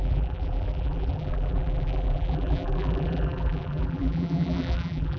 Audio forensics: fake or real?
fake